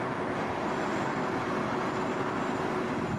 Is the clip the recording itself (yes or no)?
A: yes